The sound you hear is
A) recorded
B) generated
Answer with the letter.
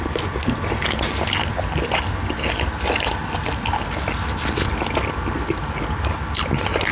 A